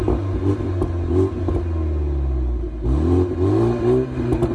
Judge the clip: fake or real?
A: real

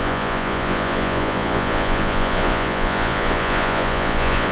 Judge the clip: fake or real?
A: fake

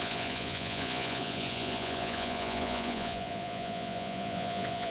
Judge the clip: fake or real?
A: fake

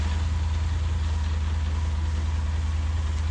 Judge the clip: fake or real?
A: real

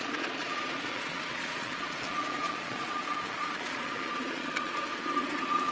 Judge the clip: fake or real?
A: fake